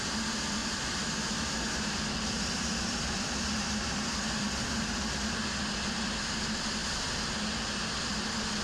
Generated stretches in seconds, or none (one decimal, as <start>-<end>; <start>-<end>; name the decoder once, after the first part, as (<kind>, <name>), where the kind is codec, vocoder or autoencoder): 0.6-4.8 (vocoder, BigVGAN v2); 6.8-7.4